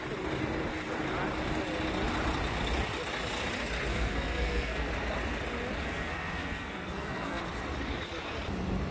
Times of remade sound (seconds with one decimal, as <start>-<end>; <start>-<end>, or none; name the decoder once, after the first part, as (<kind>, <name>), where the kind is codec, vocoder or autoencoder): 3.9-4.9 (codec, SNAC); 5.8-7.4